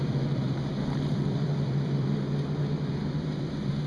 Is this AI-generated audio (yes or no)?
yes